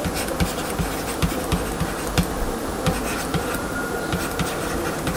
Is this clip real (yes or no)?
yes